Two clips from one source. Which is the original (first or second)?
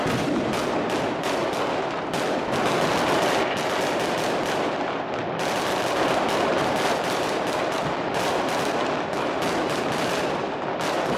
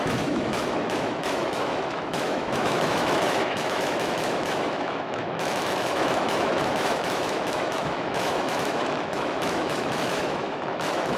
first